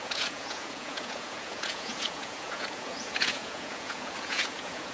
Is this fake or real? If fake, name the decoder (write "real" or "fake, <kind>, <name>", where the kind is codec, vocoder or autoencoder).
fake, vocoder, Vocos